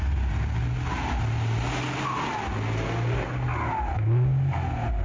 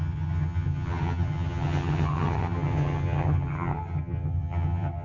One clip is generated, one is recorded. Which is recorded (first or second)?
first